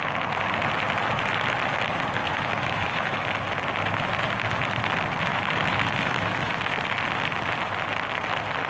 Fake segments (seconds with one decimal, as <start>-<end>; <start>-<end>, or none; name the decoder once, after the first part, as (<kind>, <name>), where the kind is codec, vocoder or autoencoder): 2.2-3.2 (autoencoder, DAC-VAE); 5.3-6.5